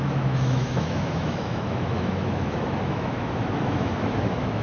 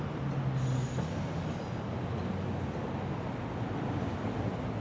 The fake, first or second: first